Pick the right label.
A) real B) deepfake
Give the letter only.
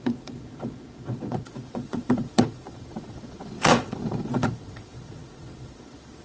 B